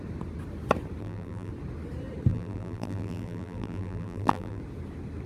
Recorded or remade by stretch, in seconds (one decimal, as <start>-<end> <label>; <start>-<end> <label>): 0.0-1.0 recorded; 1.0-1.5 remade; 1.5-2.3 recorded; 2.3-4.6 remade; 4.6-5.3 recorded